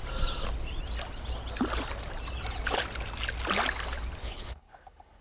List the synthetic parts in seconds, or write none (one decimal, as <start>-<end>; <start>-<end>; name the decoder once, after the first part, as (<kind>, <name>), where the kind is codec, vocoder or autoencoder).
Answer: 4.2-5.2 (codec, HILCodec)